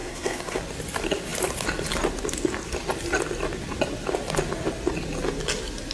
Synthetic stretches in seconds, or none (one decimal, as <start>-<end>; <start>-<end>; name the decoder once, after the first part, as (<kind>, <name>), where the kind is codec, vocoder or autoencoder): 0.0-0.6 (codec, SNAC)